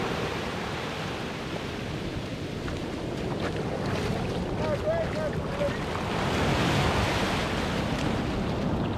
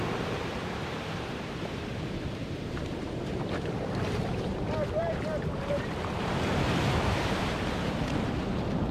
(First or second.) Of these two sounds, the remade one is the second